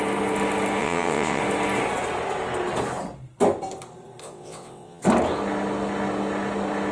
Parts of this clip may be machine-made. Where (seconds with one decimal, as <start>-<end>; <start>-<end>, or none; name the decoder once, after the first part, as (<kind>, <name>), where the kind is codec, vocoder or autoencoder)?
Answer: 0.8-1.4 (vocoder, WaveNeXt); 4.2-5.0